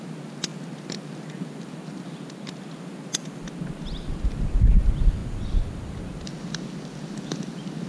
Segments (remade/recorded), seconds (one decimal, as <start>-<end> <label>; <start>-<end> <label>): 0.0-7.9 recorded